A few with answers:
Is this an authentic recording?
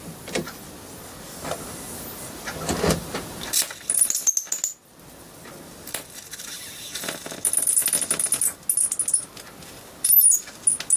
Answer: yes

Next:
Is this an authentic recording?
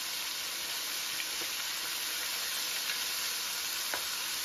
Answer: yes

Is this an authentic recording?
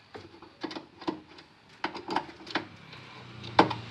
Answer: yes